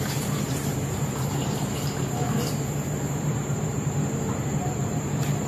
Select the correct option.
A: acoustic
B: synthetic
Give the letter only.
B